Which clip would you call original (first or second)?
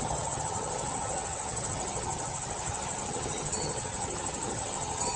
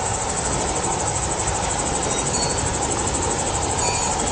second